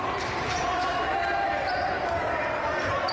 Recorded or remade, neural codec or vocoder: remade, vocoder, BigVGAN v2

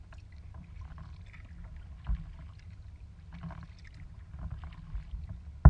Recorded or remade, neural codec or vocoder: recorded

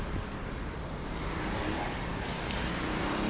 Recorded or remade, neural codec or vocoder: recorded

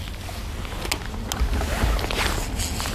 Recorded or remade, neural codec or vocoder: recorded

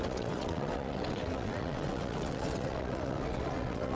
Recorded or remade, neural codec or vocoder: remade, vocoder, WaveNeXt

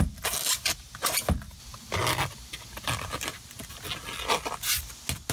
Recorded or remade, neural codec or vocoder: recorded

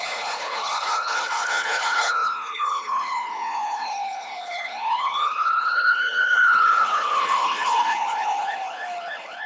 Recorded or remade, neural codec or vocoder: remade, codec, HILCodec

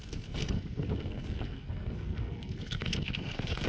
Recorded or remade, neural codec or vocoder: remade, codec, SNAC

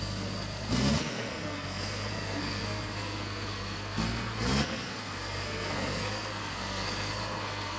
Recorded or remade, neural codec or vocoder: remade, codec, SNAC